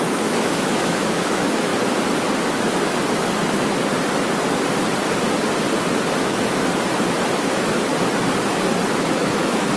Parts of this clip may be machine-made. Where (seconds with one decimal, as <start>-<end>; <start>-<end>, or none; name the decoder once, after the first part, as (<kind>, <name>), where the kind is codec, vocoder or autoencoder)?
0.0-1.7 (autoencoder, DAC-VAE); 6.2-6.7; 7.5-7.9; 9.0-9.8